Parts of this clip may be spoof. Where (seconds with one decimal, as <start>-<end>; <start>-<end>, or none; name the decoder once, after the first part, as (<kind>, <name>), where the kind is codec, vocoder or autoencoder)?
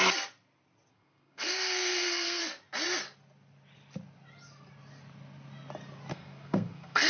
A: 0.9-2.4 (codec, SNAC); 6.1-7.1